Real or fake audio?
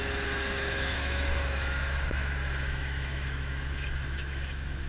fake